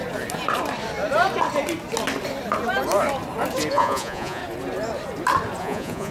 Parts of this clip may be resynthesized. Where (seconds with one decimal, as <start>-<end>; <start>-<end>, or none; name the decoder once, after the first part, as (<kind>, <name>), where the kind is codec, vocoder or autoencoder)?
3.7-4.4 (vocoder, Vocos); 5.6-6.1